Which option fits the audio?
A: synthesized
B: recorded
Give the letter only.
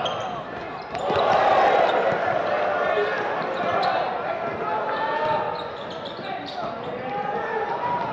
B